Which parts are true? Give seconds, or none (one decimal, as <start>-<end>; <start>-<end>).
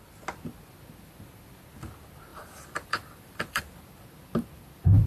0.0-2.3; 3.6-5.1